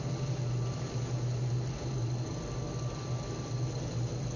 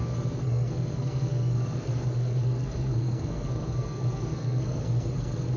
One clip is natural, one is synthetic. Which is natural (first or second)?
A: first